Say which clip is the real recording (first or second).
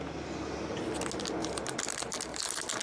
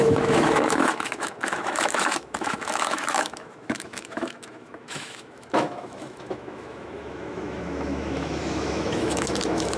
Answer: first